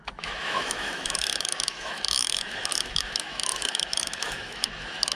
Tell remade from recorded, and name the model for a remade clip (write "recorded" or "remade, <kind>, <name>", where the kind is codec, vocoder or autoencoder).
remade, autoencoder, DAC-VAE